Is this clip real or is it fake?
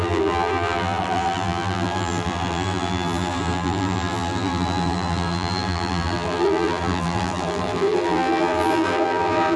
fake